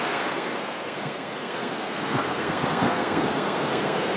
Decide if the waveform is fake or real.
fake